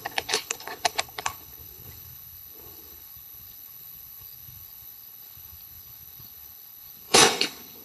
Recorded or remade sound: remade